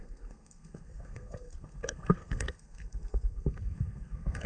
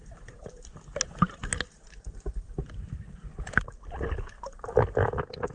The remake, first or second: first